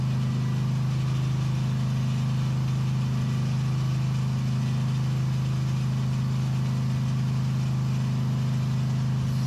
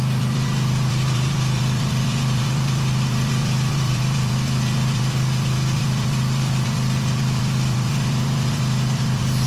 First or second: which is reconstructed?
second